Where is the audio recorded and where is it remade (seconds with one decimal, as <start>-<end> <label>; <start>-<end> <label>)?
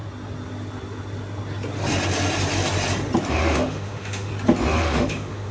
0.0-3.3 recorded; 3.3-4.3 remade; 4.3-4.8 recorded; 4.8-5.5 remade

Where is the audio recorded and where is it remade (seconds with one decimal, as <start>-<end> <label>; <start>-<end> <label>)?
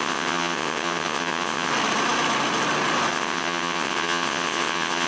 0.0-1.7 remade; 1.7-3.1 recorded; 3.1-5.1 remade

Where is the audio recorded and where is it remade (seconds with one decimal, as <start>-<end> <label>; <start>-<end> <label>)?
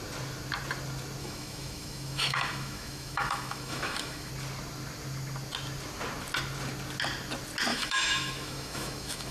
0.0-1.2 recorded; 1.2-4.3 remade; 4.3-7.7 recorded; 7.7-9.3 remade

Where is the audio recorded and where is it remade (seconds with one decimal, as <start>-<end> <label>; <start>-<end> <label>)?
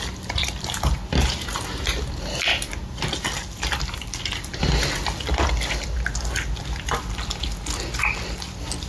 0.0-8.9 recorded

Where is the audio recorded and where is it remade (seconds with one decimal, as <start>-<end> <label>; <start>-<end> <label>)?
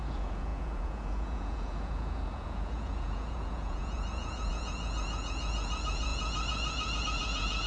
0.0-7.7 remade